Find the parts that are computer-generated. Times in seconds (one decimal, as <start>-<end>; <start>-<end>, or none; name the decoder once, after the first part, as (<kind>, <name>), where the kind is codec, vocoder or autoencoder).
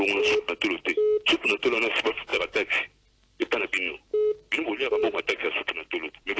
none